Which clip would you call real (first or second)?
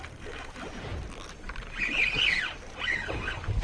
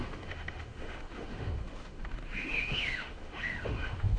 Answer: first